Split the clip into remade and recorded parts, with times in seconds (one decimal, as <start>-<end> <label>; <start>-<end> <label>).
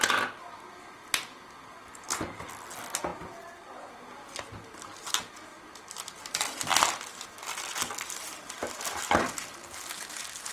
0.0-10.5 recorded